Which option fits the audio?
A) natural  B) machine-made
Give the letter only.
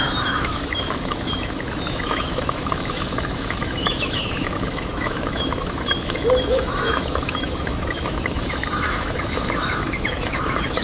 B